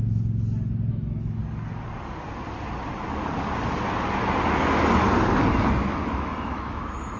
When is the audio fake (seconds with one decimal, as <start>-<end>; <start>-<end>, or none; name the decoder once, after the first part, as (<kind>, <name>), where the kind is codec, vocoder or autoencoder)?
0.9-1.4 (autoencoder, DAC-VAE); 5.6-7.2